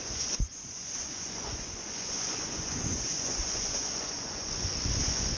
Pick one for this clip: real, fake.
fake